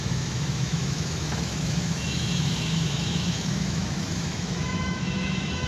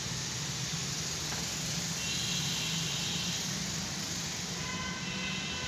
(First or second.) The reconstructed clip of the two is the first